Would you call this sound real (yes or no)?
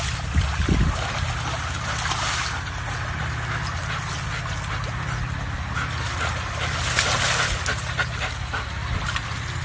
yes